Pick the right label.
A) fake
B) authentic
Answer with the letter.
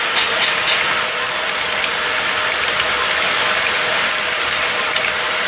B